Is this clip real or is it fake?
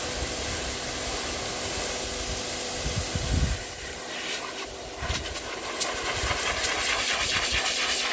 real